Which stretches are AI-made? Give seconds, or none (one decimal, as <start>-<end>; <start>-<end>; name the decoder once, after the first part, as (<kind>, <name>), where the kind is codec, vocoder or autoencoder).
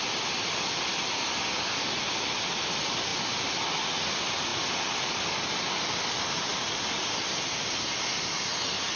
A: none